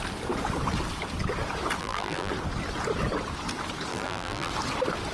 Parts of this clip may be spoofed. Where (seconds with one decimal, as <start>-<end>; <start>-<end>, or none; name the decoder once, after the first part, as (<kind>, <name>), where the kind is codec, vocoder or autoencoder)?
1.8-2.3 (vocoder, BigVGAN v2); 3.9-4.5